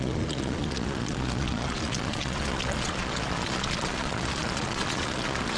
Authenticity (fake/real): fake